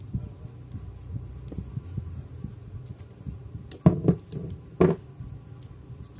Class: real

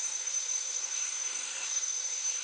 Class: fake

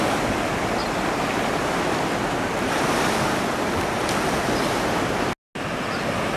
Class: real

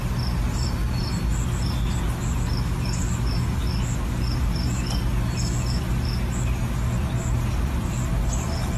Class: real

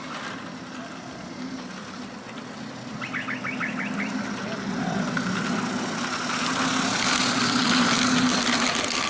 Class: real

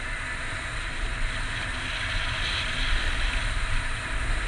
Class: real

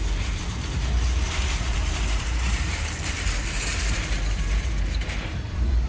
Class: fake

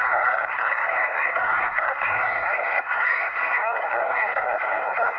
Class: fake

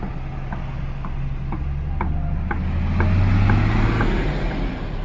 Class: real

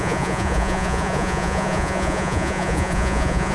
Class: fake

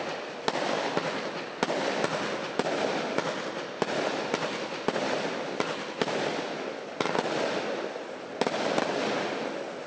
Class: real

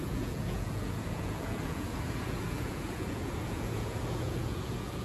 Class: fake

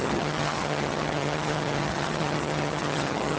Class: fake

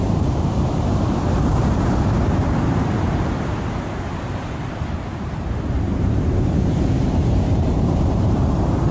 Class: fake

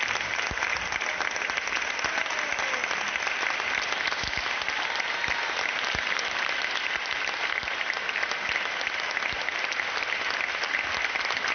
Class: real